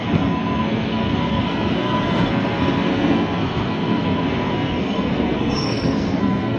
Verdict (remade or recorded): remade